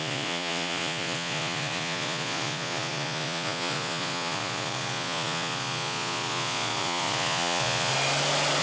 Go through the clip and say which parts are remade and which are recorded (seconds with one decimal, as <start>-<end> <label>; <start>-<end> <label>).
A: 0.0-7.9 remade; 7.9-8.6 recorded